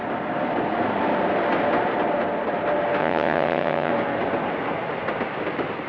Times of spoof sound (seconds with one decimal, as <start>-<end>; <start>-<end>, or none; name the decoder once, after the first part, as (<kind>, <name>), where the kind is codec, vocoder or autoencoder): 3.0-3.9 (vocoder, HiFi-GAN)